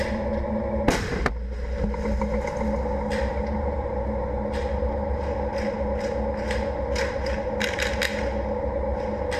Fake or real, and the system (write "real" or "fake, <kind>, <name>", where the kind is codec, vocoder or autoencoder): real